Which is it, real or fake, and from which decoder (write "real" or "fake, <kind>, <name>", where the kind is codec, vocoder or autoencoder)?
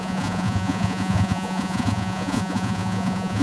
fake, vocoder, Vocos